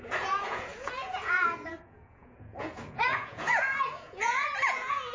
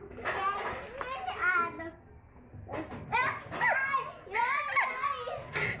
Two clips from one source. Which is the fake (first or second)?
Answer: first